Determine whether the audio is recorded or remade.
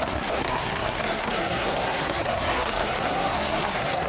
remade